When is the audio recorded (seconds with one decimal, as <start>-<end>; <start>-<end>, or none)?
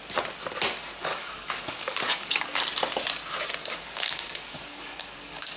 0.0-1.1; 2.6-3.6